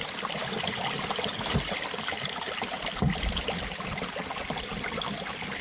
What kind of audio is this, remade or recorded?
recorded